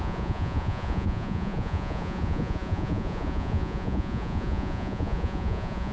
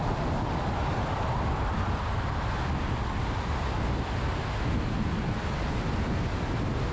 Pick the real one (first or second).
second